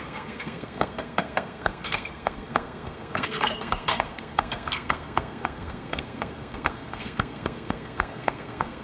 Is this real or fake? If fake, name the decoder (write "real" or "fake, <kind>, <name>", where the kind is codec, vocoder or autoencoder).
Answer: fake, codec, SNAC